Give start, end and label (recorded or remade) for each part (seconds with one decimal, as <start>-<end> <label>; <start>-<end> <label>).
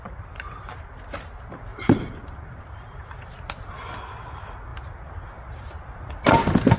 0.0-1.7 recorded; 1.7-3.3 remade; 3.3-6.8 recorded